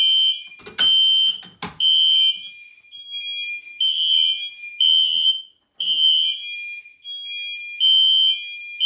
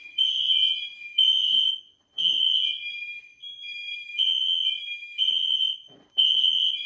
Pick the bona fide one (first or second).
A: first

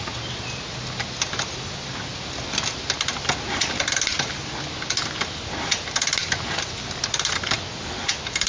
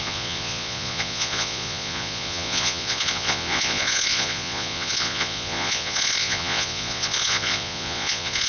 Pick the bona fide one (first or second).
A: first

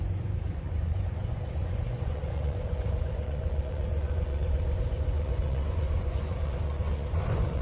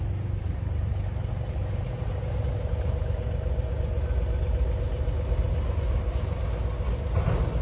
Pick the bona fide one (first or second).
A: second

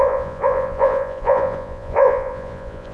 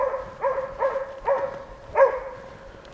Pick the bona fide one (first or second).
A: second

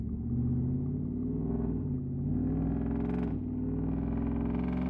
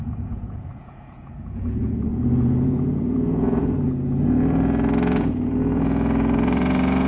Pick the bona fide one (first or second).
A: first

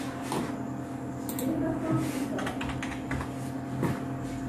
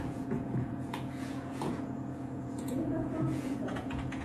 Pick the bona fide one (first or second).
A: first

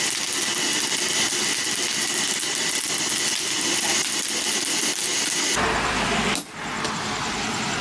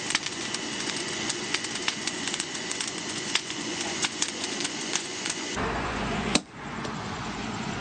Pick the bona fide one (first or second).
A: first